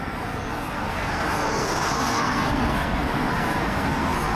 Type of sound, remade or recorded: remade